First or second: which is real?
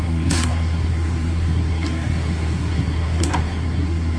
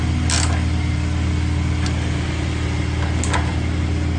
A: second